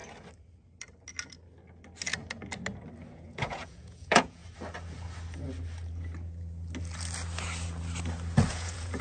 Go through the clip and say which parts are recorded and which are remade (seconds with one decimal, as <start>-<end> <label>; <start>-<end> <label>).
0.0-3.1 recorded; 3.1-4.4 remade; 4.4-8.5 recorded; 8.5-9.0 remade